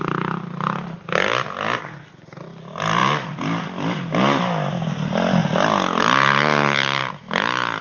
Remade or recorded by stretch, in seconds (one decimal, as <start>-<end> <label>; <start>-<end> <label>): 0.0-7.8 recorded